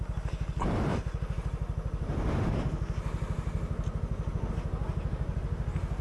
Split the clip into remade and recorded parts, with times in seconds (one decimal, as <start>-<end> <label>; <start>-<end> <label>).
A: 0.0-6.0 recorded